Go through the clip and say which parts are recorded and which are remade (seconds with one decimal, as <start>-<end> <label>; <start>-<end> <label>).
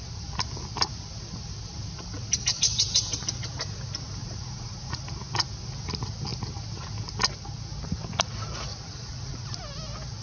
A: 0.0-4.2 recorded; 4.2-5.0 remade; 5.0-8.7 recorded; 8.7-9.5 remade; 9.5-10.2 recorded